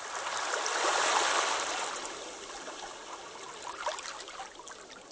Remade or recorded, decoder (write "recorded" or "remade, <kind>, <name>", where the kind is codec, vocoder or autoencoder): recorded